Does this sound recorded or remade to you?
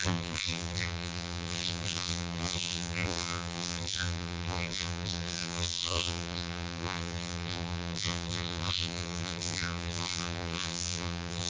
remade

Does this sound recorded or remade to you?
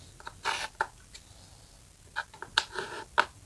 recorded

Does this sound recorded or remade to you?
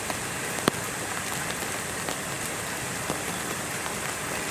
recorded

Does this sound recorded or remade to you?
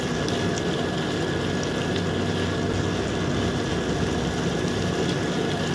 recorded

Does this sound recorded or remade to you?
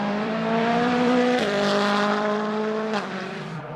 remade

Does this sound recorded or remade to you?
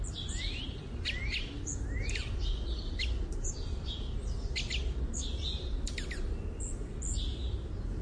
recorded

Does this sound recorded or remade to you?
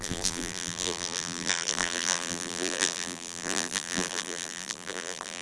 remade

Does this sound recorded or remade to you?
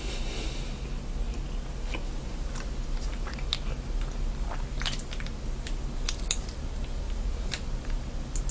recorded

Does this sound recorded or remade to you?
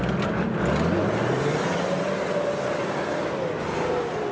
recorded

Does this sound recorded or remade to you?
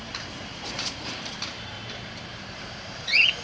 remade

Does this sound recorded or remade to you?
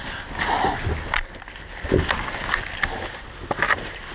recorded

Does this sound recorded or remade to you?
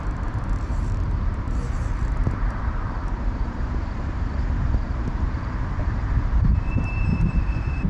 remade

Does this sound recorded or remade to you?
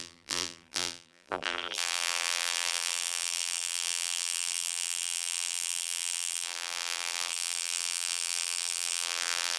remade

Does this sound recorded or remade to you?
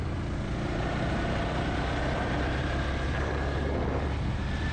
recorded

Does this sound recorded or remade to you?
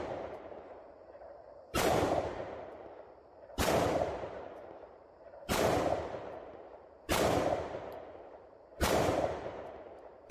remade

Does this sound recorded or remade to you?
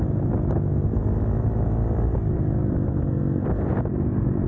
recorded